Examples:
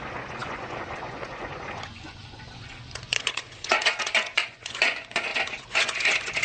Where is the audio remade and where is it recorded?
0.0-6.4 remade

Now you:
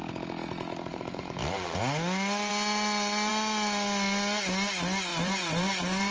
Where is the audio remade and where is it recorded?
0.0-0.9 recorded; 0.9-1.8 remade; 1.8-5.1 recorded; 5.1-6.1 remade

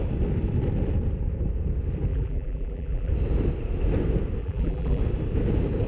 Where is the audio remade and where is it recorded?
0.0-2.1 recorded; 2.1-3.1 remade; 3.1-4.4 recorded; 4.4-5.0 remade; 5.0-5.9 recorded

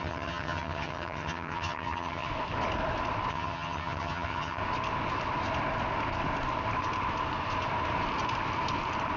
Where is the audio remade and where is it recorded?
0.0-2.3 remade; 2.3-3.3 recorded; 3.3-4.6 remade; 4.6-9.2 recorded

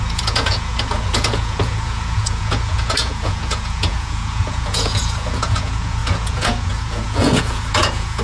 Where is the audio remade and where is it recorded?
0.0-8.2 remade

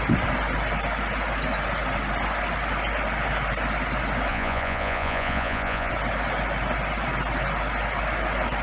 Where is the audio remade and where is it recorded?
0.0-4.3 recorded; 4.3-5.9 remade; 5.9-8.6 recorded

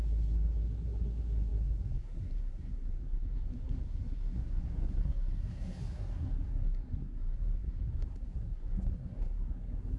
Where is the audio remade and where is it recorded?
0.0-10.0 remade